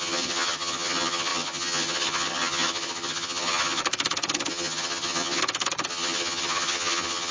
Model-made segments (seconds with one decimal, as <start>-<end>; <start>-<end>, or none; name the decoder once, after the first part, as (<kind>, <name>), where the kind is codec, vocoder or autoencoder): 0.0-3.8 (vocoder, HiFi-GAN); 4.5-5.4; 5.9-7.3